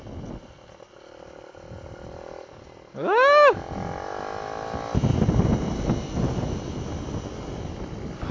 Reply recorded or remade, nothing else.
recorded